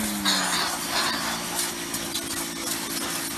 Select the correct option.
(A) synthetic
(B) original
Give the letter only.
B